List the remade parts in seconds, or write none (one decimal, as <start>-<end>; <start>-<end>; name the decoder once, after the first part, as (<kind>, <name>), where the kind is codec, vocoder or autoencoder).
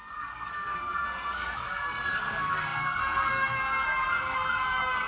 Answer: 0.0-5.1 (codec, SNAC)